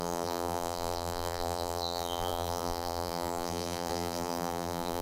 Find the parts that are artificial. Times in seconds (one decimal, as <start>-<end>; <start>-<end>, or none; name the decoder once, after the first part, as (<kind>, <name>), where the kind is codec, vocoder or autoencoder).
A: 0.0-5.0 (vocoder, BigVGAN v2)